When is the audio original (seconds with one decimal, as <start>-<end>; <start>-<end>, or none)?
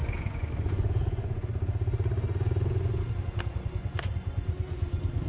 1.5-2.3; 3.0-5.3